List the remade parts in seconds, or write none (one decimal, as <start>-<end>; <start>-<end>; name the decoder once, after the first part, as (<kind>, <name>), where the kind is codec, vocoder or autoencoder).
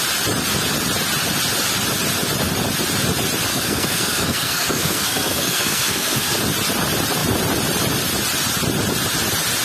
3.5-6.4 (codec, SNAC)